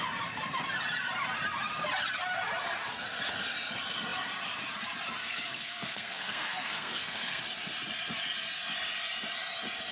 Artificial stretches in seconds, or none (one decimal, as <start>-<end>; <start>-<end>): 5.2-7.4